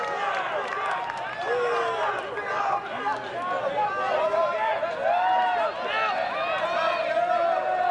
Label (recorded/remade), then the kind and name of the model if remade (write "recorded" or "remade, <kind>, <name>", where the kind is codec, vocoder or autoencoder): recorded